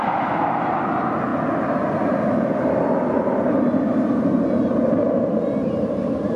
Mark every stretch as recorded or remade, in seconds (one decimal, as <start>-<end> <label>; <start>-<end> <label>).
0.0-6.4 recorded